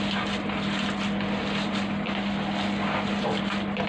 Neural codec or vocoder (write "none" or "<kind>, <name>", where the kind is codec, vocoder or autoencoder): vocoder, BigVGAN v2